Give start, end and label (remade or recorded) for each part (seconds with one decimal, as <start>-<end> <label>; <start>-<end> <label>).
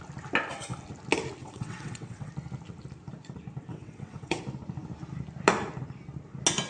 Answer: 0.0-1.4 recorded; 1.4-2.3 remade; 2.3-3.7 recorded; 3.7-4.4 remade; 4.4-6.7 recorded